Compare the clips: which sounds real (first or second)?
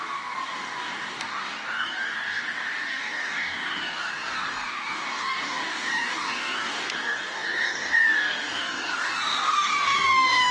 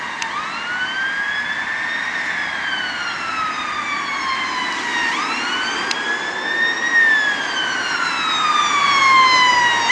second